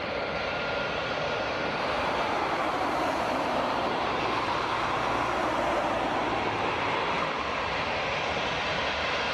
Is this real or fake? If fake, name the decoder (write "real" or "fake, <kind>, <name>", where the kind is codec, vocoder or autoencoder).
fake, vocoder, BigVGAN v2